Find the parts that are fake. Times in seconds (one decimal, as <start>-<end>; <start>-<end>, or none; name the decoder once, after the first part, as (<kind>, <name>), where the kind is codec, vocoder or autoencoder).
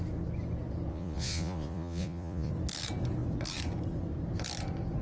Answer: 0.9-2.5 (vocoder, Vocos)